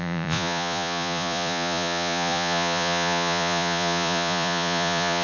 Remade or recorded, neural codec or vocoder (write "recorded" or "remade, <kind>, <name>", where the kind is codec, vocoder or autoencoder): remade, vocoder, Vocos